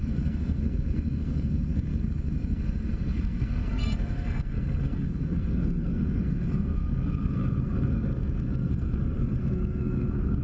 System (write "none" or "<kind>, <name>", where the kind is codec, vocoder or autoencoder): codec, SNAC